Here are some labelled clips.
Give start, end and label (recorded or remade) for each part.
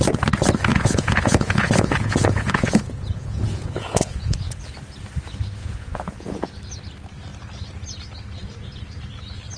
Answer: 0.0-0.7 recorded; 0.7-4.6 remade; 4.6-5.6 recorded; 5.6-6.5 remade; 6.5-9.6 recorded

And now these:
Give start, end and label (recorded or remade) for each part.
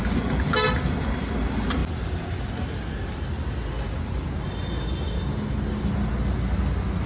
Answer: 0.0-7.1 recorded